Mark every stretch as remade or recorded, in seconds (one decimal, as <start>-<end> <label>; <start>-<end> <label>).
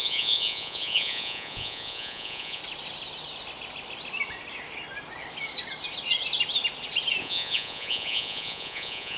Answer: 0.0-2.6 remade; 2.6-7.2 recorded; 7.2-9.2 remade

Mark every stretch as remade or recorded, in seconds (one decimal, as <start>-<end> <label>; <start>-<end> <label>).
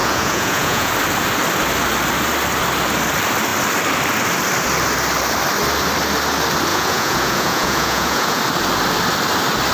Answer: 0.0-0.9 remade; 0.9-6.7 recorded; 6.7-8.4 remade; 8.4-9.7 recorded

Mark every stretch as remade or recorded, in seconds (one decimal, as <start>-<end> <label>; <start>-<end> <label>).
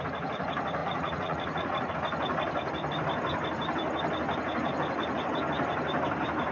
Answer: 0.0-0.8 recorded; 0.8-1.9 remade; 1.9-6.5 recorded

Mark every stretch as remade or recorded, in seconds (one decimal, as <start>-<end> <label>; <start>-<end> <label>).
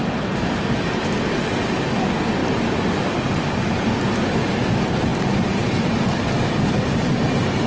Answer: 0.0-7.7 recorded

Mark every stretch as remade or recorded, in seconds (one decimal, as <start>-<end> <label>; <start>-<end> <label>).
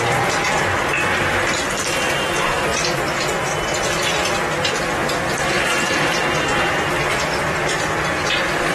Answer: 0.0-8.7 recorded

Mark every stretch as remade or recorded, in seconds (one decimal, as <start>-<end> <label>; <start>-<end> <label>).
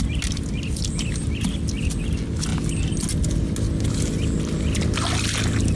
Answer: 0.0-5.8 recorded